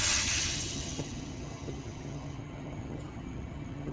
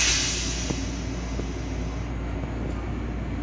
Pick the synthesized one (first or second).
first